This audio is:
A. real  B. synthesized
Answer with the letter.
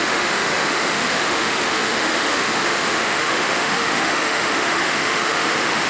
B